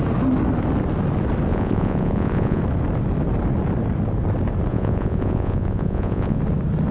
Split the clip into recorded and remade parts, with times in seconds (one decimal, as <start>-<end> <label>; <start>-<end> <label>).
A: 0.0-1.5 recorded; 1.5-2.6 remade; 2.6-4.7 recorded; 4.7-6.4 remade; 6.4-6.9 recorded